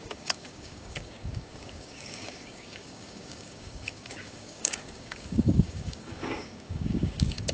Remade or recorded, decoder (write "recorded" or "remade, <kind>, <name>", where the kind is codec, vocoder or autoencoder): remade, codec, DAC